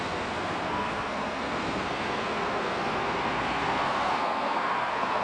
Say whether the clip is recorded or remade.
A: remade